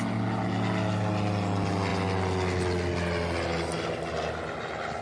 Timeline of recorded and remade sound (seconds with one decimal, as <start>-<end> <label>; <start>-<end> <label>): 0.0-5.0 recorded